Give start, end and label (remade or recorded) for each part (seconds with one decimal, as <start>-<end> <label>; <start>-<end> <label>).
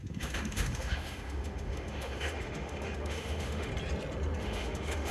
0.0-3.7 remade; 3.7-4.4 recorded; 4.4-5.1 remade